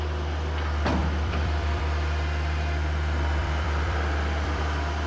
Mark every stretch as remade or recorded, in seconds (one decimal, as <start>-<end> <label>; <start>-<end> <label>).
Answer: 0.0-1.0 recorded; 1.0-1.8 remade; 1.8-3.4 recorded; 3.4-5.1 remade